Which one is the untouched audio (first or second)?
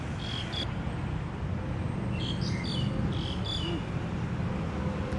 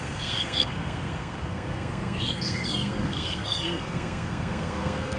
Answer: first